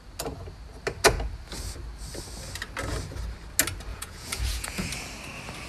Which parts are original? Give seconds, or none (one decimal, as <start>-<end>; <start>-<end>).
0.0-3.9; 4.9-5.7